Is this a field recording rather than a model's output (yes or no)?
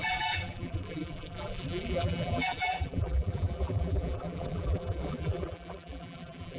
no